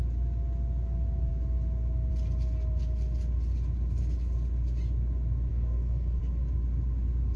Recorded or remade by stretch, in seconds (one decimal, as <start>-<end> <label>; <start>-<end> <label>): 0.0-5.5 recorded; 5.5-6.2 remade; 6.2-7.4 recorded